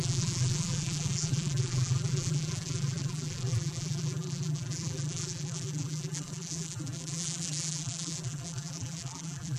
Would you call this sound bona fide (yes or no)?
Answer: no